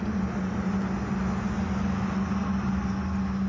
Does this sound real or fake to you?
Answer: real